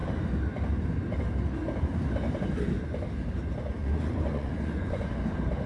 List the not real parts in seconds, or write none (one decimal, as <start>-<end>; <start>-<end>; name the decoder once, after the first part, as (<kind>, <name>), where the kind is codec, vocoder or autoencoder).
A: 3.8-5.1 (vocoder, Vocos)